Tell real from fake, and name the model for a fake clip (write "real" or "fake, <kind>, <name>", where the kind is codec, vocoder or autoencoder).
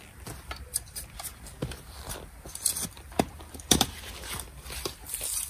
fake, vocoder, BigVGAN v2